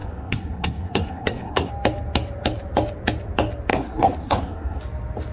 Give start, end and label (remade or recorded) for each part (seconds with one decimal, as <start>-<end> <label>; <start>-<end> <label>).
0.0-1.7 remade; 1.7-3.7 recorded; 3.7-4.8 remade; 4.8-5.3 recorded